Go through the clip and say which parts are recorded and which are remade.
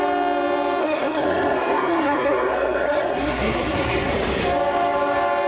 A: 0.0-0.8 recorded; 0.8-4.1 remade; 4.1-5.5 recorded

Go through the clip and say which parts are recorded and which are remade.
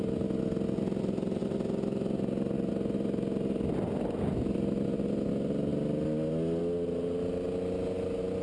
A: 0.0-8.4 recorded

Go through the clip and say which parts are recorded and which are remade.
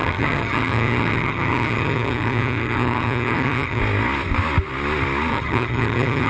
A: 0.0-3.8 remade; 3.8-5.3 recorded; 5.3-6.3 remade